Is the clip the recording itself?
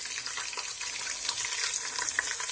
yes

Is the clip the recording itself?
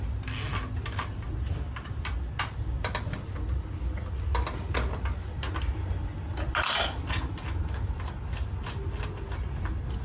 yes